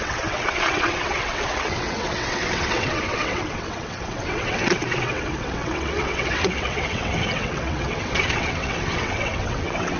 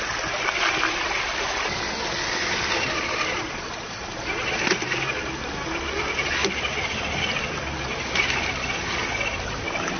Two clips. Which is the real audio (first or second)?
second